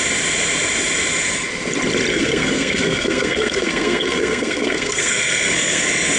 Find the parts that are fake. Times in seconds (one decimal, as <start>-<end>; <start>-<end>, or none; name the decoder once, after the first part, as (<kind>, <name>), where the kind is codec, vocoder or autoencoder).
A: 2.1-5.8 (codec, SNAC)